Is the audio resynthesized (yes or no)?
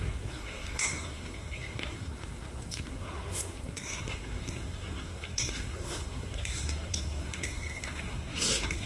yes